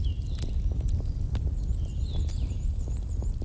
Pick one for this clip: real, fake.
real